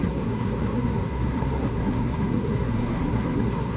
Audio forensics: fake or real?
fake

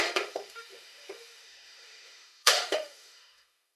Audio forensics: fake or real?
fake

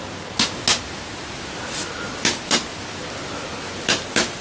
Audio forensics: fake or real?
real